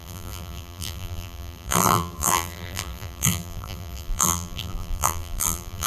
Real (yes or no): no